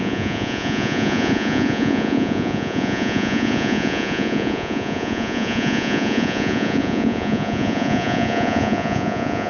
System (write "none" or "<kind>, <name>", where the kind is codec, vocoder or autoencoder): vocoder, Vocos